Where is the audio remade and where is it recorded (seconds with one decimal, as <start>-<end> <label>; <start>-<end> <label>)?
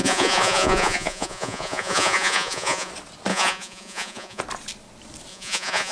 0.0-2.9 remade; 2.9-3.3 recorded; 3.3-4.4 remade; 4.4-5.3 recorded; 5.3-5.9 remade